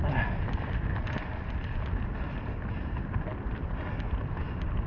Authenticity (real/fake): real